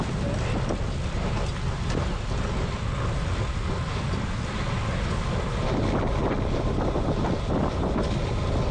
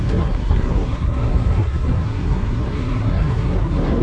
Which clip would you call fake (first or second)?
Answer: second